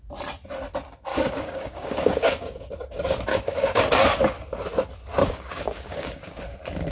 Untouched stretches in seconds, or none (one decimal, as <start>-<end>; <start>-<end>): 0.0-1.1; 2.7-3.3; 3.8-5.2; 6.4-6.9